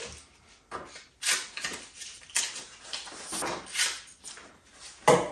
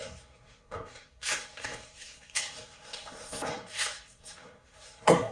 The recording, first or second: first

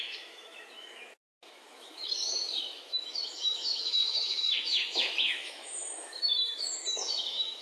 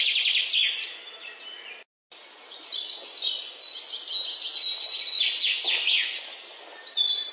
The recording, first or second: second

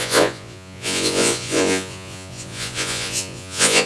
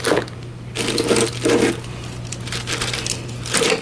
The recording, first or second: second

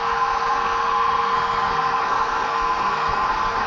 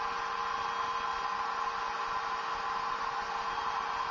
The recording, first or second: second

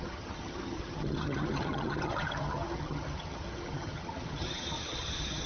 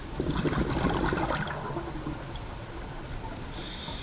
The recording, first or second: second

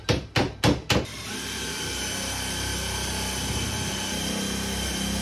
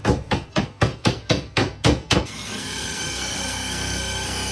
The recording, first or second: first